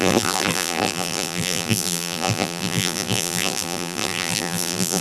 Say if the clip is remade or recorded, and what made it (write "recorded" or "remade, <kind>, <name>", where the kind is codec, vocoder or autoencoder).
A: remade, vocoder, BigVGAN v2